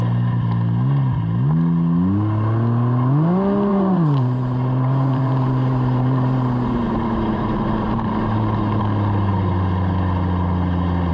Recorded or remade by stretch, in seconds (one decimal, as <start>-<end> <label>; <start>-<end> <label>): 0.0-3.7 recorded; 3.7-8.8 remade; 8.8-11.1 recorded